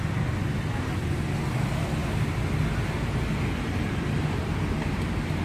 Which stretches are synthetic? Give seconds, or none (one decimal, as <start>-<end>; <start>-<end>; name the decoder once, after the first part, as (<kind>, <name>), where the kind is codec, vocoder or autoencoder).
none